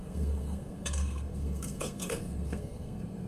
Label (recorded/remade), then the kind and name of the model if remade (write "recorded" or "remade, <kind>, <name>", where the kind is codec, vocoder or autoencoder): remade, codec, SNAC